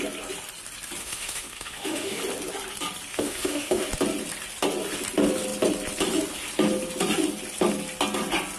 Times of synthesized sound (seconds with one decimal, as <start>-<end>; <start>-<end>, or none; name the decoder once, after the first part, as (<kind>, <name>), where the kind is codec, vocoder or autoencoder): 1.0-2.2 (autoencoder, DAC-VAE); 3.1-3.9